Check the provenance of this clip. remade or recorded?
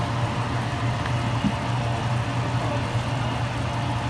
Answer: recorded